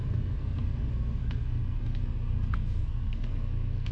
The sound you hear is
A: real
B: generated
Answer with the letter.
B